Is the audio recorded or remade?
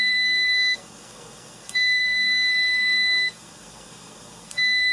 remade